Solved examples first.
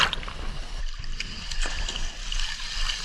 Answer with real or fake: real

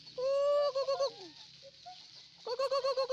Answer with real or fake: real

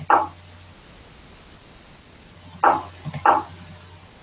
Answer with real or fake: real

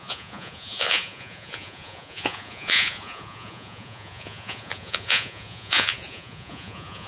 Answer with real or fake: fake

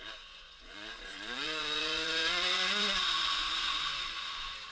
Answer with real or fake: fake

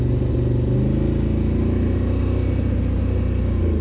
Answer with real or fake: real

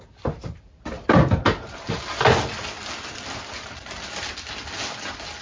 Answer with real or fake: real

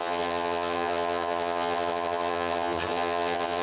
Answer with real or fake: fake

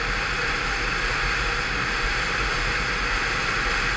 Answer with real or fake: real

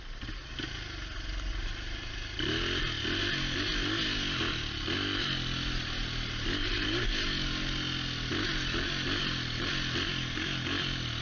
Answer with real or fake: real